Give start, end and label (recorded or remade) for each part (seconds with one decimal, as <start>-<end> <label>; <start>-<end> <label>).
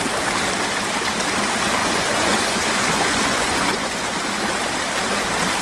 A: 0.0-1.8 recorded; 1.8-4.2 remade; 4.2-5.6 recorded